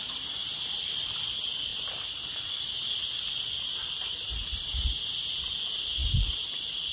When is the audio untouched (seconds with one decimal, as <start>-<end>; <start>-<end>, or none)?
0.0-6.9